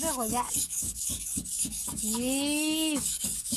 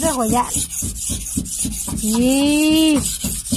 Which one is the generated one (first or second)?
first